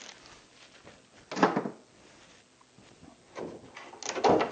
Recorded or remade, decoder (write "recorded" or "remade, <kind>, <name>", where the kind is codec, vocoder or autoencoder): recorded